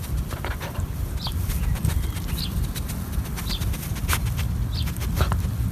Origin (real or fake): real